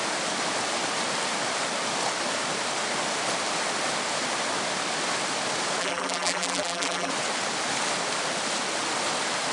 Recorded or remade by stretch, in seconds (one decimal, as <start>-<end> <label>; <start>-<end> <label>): 0.0-5.8 recorded; 5.8-7.1 remade; 7.1-9.5 recorded